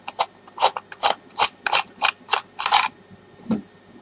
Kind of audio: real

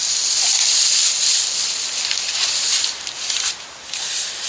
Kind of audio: real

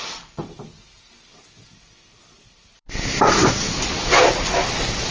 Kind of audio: fake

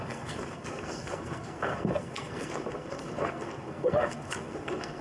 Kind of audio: fake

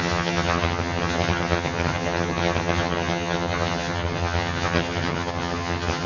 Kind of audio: fake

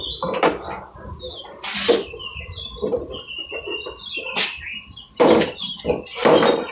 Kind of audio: fake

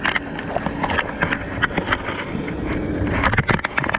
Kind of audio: real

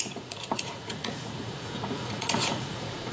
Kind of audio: fake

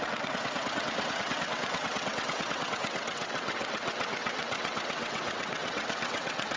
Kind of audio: fake